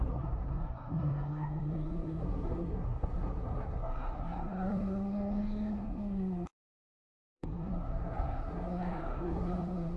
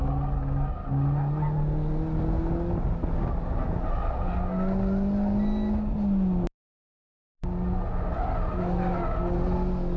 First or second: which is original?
second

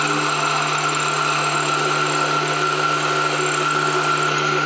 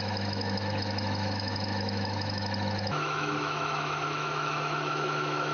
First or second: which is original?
first